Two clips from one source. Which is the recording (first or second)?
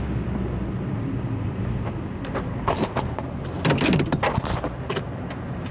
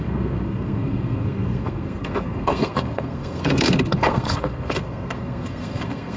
first